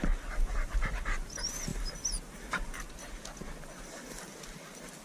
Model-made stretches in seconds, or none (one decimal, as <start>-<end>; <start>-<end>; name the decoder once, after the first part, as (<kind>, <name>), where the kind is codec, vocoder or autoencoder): none